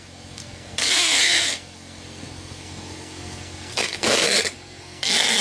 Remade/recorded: remade